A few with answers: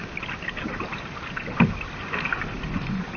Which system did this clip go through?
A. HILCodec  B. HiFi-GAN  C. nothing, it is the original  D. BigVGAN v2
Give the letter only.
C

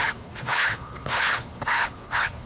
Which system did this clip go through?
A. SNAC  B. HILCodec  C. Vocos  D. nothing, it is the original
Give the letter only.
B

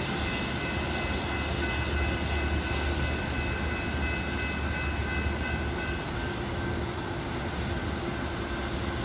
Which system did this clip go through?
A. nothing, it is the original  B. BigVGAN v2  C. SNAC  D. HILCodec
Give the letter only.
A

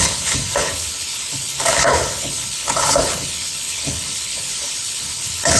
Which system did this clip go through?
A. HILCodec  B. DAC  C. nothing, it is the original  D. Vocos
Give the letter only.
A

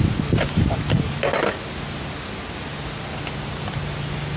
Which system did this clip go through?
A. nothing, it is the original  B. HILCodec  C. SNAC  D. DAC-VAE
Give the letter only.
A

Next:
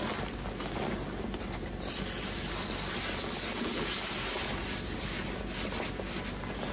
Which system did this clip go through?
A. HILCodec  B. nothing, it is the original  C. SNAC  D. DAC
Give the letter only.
B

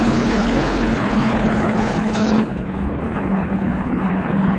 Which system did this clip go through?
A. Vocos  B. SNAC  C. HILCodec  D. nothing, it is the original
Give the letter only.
C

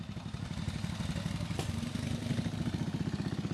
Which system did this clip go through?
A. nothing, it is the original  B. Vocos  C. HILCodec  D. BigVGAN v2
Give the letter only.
A